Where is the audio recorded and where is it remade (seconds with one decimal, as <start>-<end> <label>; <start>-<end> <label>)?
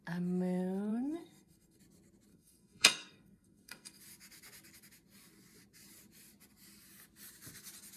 0.0-0.9 recorded; 0.9-1.8 remade; 1.8-2.3 recorded; 2.3-4.0 remade; 4.0-8.0 recorded